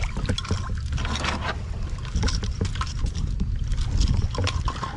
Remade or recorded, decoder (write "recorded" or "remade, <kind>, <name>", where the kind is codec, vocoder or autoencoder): recorded